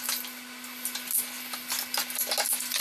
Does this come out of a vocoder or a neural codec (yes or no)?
no